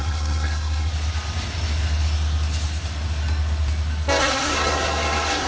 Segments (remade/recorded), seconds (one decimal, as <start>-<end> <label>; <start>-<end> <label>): 0.0-0.9 remade; 0.9-4.2 recorded; 4.2-5.5 remade